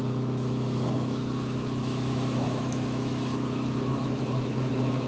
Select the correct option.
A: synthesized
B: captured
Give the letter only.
A